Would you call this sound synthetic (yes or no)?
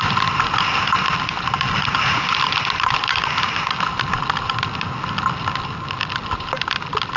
no